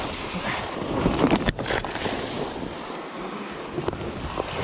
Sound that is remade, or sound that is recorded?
recorded